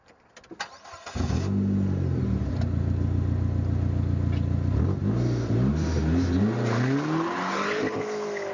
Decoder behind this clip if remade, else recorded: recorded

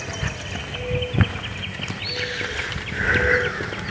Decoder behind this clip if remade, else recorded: recorded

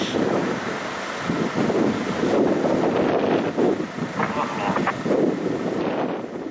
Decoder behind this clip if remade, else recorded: recorded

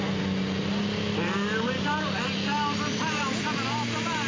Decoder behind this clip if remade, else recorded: recorded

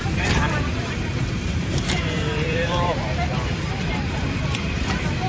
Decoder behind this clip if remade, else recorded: remade, vocoder, BigVGAN v2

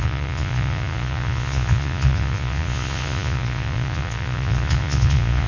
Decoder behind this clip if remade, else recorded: remade, vocoder, Vocos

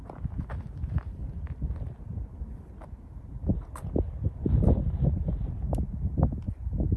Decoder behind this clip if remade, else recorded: recorded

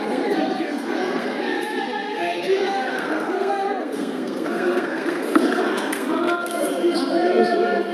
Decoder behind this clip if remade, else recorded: remade, codec, SNAC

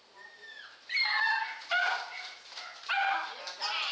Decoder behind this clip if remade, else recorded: recorded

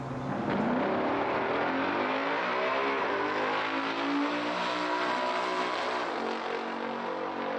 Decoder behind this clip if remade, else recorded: recorded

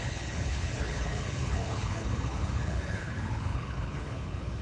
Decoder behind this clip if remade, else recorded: remade, codec, HILCodec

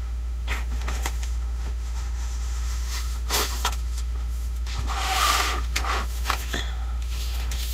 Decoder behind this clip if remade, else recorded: remade, autoencoder, DAC-VAE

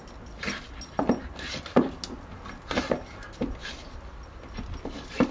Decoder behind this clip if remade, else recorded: recorded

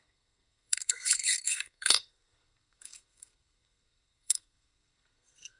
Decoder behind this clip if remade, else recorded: remade, codec, SNAC